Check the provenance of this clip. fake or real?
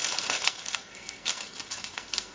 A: fake